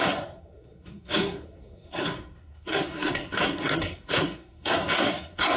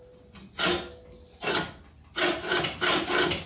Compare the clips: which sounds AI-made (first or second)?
first